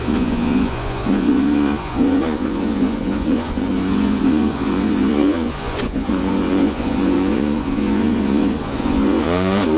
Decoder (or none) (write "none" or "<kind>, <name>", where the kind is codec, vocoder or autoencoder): vocoder, Vocos